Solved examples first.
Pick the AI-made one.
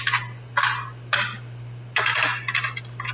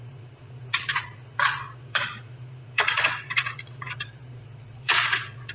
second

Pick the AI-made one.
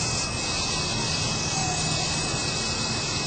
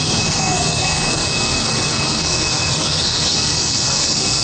second